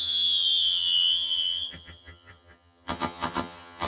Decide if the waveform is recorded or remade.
remade